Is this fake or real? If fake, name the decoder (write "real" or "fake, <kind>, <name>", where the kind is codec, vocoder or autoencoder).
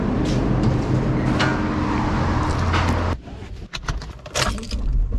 real